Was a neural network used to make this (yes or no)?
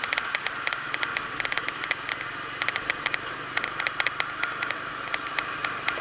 no